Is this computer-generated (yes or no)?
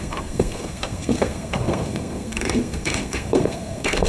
yes